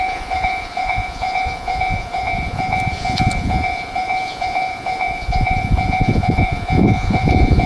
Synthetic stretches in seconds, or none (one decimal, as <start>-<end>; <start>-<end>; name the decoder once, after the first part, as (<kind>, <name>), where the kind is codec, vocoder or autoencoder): 0.0-7.7 (vocoder, Vocos)